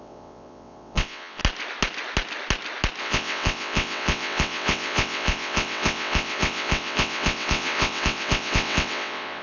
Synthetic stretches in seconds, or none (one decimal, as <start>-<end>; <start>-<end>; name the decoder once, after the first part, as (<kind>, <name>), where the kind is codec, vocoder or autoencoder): 0.0-1.4 (vocoder, WaveNeXt); 3.0-9.4